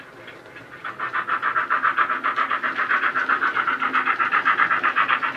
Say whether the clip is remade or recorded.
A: recorded